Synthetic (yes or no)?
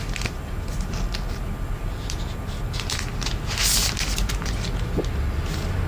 no